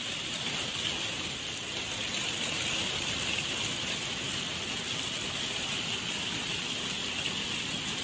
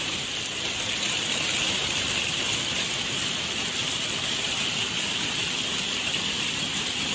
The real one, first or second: first